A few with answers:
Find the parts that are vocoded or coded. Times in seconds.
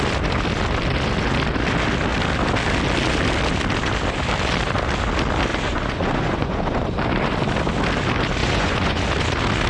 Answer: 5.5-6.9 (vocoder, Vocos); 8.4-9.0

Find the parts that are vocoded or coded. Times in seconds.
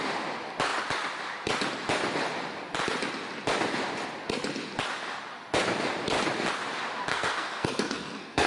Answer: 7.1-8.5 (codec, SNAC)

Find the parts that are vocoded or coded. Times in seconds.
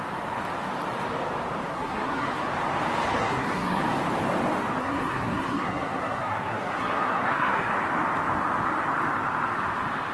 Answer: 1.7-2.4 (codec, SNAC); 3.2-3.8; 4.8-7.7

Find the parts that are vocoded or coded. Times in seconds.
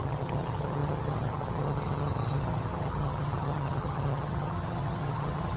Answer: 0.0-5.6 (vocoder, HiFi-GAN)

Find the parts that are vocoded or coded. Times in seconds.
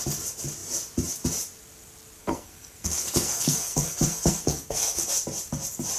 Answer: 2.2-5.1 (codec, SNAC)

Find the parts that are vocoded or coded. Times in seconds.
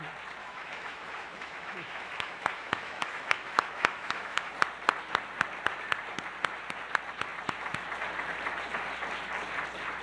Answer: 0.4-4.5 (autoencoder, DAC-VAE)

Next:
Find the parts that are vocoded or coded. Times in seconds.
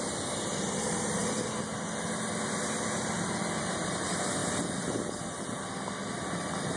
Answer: 0.0-1.2 (vocoder, BigVGAN v2); 3.7-4.4